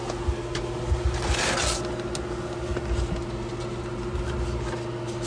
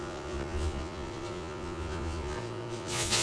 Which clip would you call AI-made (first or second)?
second